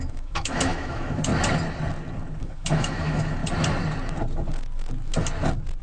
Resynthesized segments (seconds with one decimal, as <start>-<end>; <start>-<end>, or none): 0.0-1.3; 2.4-3.4

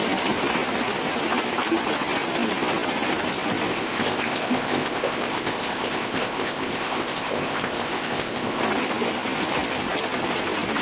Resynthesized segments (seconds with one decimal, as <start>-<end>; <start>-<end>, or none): 3.7-8.6

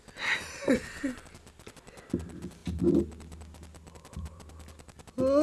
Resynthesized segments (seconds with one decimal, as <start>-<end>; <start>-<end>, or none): none

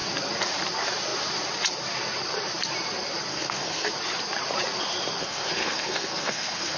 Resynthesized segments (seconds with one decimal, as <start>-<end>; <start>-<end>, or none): 3.3-3.9; 5.2-6.8